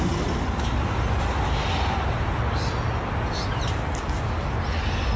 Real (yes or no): yes